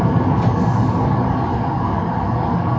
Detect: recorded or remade remade